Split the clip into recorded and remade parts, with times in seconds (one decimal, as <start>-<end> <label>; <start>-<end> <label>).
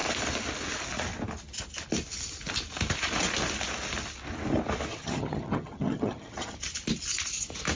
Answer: 0.0-4.9 recorded; 4.9-6.6 remade; 6.6-7.8 recorded